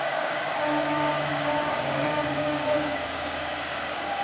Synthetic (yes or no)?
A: yes